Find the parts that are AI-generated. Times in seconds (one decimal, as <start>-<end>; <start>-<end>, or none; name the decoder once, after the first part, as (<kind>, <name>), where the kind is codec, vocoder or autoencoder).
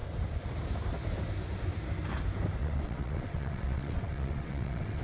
2.6-5.0 (vocoder, WaveNeXt)